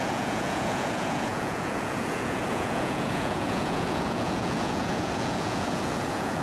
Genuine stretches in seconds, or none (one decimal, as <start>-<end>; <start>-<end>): none